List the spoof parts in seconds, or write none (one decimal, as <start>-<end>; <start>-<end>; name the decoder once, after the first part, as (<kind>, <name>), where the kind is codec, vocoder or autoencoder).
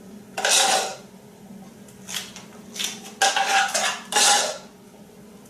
none